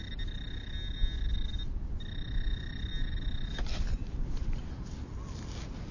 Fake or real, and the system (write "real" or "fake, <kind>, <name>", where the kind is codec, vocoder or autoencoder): real